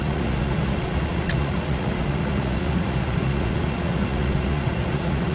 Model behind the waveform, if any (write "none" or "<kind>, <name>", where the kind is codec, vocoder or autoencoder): vocoder, Vocos